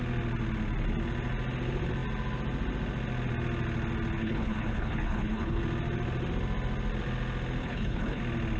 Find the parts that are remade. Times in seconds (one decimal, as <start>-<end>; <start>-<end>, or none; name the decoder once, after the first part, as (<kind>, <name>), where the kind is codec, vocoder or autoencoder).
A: 4.2-5.6 (codec, HILCodec); 7.6-8.2